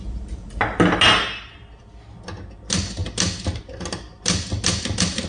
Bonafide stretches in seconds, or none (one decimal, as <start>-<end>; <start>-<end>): 0.0-5.3